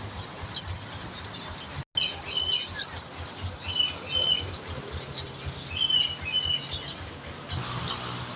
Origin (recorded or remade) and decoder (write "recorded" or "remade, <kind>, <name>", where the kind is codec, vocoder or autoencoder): recorded